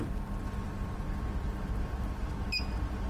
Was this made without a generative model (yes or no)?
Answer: yes